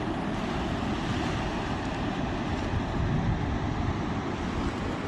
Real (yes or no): yes